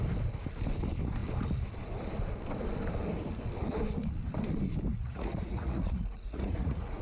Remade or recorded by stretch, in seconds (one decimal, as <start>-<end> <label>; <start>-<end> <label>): 0.0-4.9 recorded; 4.9-7.0 remade

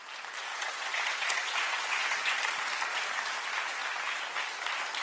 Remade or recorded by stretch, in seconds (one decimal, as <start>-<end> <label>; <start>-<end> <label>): 0.0-0.5 recorded; 0.5-2.4 remade; 2.4-5.0 recorded